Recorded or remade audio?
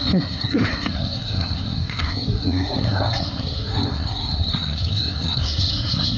remade